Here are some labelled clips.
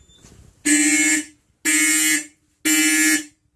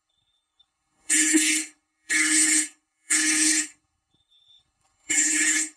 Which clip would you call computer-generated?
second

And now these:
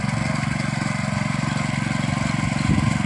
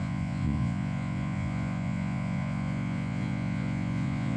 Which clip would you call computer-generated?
second